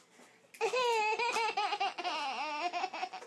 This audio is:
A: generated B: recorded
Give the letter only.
B